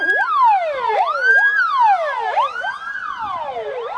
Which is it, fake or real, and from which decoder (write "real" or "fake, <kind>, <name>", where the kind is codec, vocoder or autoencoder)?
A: real